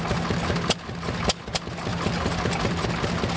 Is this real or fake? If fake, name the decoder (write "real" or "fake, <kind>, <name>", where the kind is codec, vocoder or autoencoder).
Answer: real